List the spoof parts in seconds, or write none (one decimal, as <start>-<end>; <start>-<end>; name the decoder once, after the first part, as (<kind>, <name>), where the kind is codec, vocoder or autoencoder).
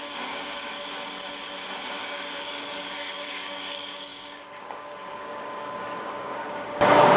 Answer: 0.0-0.7 (codec, DAC); 2.0-7.2